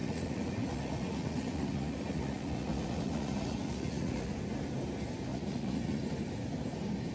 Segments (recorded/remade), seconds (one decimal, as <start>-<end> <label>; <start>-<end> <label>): 0.0-4.3 remade; 4.3-5.3 recorded; 5.3-6.0 remade; 6.0-7.1 recorded